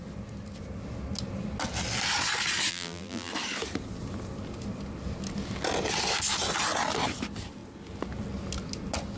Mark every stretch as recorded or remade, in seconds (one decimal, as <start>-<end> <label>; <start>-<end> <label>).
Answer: 0.0-2.7 recorded; 2.7-3.3 remade; 3.3-9.2 recorded